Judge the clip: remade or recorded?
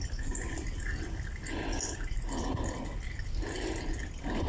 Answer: recorded